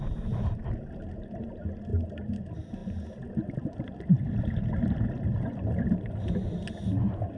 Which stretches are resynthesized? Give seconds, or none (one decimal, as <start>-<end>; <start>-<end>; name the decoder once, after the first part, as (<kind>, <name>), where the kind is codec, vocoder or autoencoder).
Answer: none

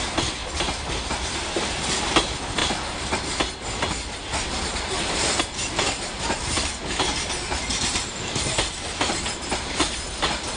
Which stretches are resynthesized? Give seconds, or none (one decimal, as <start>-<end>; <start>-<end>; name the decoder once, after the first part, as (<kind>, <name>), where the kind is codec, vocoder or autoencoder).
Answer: 7.7-10.1 (vocoder, BigVGAN v2)